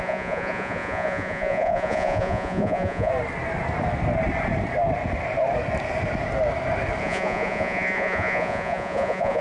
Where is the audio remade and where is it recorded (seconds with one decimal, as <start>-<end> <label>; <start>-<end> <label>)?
0.0-3.1 remade; 3.1-7.0 recorded; 7.0-9.4 remade